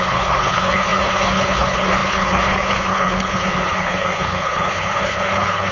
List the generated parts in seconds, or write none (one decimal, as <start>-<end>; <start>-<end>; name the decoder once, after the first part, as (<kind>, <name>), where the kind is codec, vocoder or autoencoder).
0.0-5.7 (codec, HILCodec)